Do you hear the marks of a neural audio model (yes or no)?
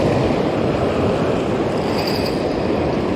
no